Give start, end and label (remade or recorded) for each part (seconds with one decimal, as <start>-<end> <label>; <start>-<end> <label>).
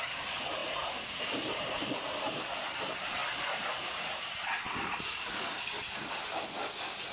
0.0-3.2 remade; 3.2-7.1 recorded